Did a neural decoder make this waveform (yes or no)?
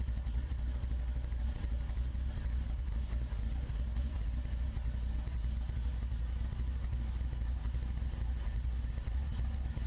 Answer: no